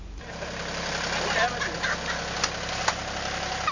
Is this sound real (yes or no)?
yes